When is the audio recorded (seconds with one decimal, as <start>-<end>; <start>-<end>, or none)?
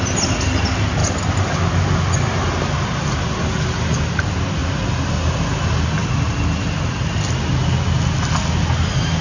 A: 0.0-9.2